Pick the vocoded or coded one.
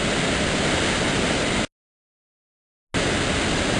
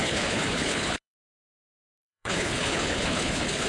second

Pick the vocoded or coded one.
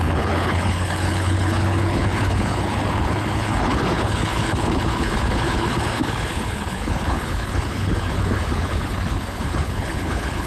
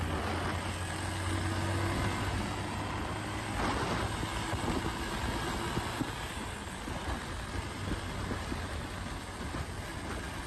first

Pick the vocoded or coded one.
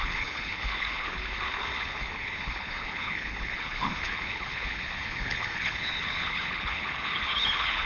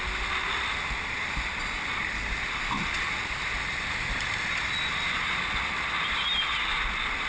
first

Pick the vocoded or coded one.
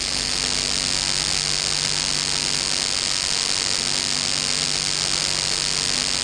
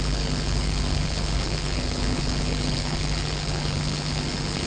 second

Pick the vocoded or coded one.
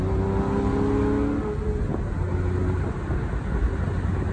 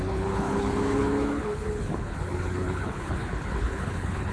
second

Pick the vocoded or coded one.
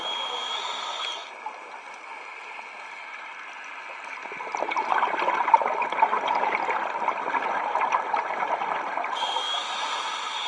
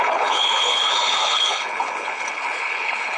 second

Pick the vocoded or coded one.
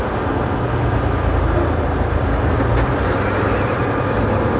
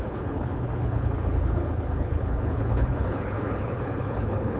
second